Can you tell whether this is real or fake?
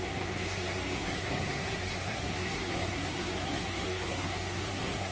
fake